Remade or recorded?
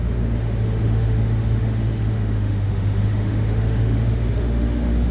remade